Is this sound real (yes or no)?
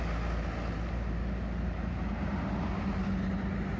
yes